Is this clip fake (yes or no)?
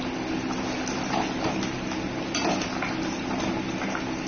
no